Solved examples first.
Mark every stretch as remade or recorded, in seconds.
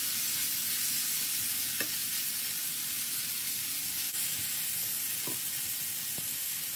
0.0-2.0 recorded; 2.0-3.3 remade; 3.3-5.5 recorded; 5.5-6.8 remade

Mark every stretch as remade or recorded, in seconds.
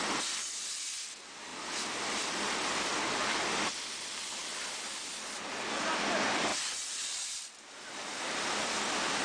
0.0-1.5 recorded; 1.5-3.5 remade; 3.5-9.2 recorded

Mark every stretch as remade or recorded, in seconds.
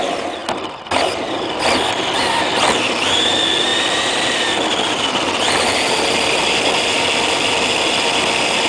0.0-8.7 recorded